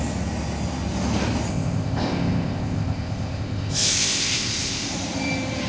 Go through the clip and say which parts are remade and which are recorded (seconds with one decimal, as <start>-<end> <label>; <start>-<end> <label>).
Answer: 0.0-1.5 recorded; 1.5-4.9 remade; 4.9-5.7 recorded